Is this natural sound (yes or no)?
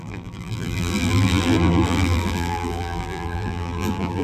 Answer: no